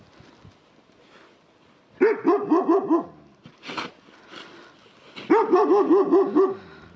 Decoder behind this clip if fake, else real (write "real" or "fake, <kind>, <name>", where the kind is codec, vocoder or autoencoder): real